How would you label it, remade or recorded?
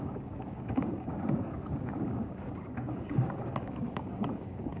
remade